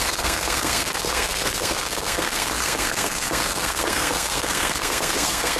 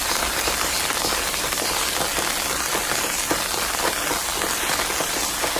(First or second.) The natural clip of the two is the second